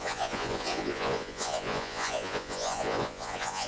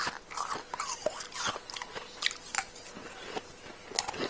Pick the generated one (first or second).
first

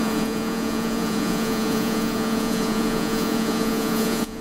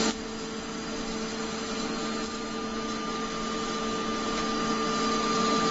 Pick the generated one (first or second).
first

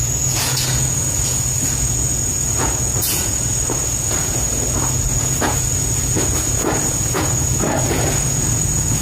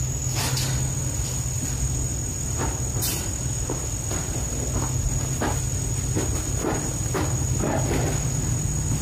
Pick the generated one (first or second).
first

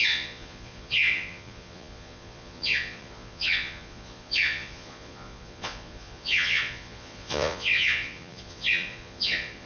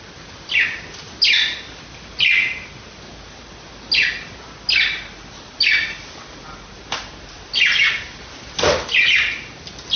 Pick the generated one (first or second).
first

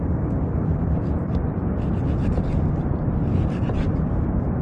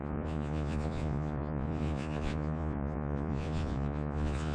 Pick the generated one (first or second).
second